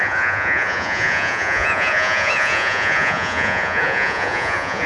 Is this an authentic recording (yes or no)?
no